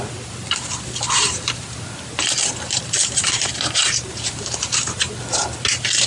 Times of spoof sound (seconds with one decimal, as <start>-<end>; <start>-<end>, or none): 3.0-5.1